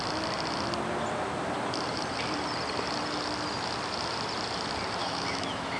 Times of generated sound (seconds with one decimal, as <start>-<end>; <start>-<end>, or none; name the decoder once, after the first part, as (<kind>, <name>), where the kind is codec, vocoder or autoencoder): 5.0-5.8 (autoencoder, DAC-VAE)